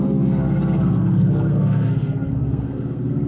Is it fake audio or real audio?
fake